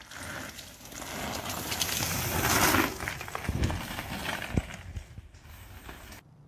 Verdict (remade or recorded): recorded